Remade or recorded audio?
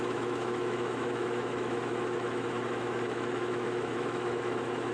remade